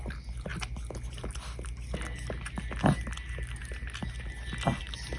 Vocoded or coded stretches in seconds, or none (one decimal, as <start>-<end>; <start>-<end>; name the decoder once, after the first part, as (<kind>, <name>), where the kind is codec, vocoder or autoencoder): none